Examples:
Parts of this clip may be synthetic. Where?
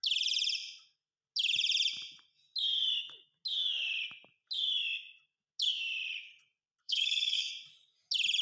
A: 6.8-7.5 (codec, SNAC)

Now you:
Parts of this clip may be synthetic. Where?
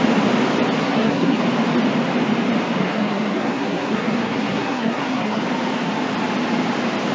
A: 0.8-1.4 (codec, SNAC); 2.8-5.4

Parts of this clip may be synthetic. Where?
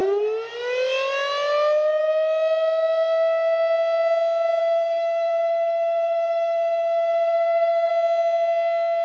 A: 4.6-7.9 (codec, SNAC)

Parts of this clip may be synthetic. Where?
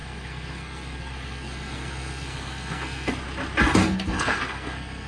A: 0.0-3.1 (codec, SNAC); 3.8-5.1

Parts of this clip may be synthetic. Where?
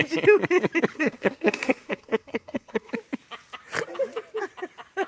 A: 0.9-2.9 (codec, SNAC)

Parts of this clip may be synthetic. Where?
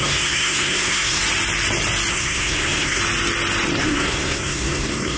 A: 0.0-1.2 (codec, SNAC); 2.1-3.0; 3.8-5.2